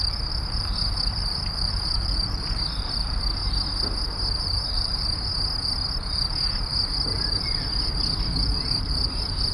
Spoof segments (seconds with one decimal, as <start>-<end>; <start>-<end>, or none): 0.0-3.4; 4.4-5.3; 6.5-9.5